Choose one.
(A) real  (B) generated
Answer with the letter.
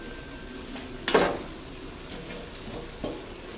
A